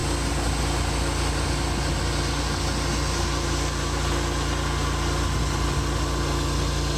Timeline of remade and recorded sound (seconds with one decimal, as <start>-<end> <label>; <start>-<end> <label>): 0.0-7.0 recorded